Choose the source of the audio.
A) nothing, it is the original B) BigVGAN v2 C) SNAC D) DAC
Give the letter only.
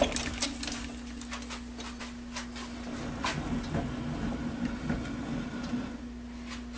A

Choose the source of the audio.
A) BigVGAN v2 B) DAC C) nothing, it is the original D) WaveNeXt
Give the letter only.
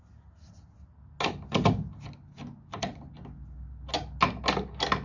C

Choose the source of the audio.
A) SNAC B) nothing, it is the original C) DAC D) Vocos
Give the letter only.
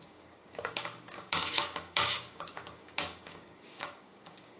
C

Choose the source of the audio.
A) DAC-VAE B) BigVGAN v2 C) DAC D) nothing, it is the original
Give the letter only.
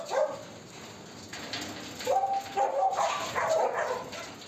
D